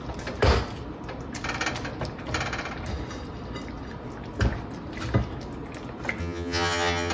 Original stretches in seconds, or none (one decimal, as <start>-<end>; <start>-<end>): 0.0-6.2